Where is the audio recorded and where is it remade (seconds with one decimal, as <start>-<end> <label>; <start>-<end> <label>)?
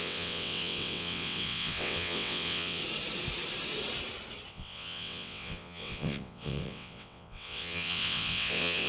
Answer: 0.0-2.8 remade; 2.8-4.5 recorded; 4.5-8.9 remade